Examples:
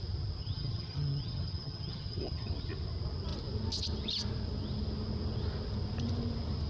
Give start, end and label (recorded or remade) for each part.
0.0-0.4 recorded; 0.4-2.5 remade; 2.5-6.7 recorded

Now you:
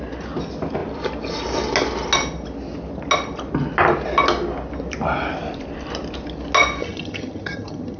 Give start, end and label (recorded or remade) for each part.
0.0-6.8 recorded; 6.8-8.0 remade

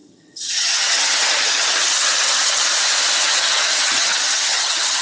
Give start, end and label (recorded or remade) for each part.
0.0-2.7 remade; 2.7-3.2 recorded; 3.2-5.0 remade

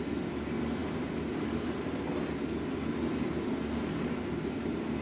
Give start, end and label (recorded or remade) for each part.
0.0-5.0 recorded

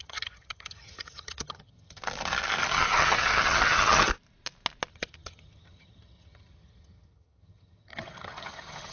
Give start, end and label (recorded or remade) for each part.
0.0-2.0 remade; 2.0-2.7 recorded; 2.7-4.1 remade; 4.1-4.9 recorded; 4.9-8.9 remade